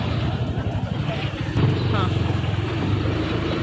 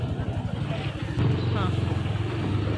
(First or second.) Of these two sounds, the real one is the second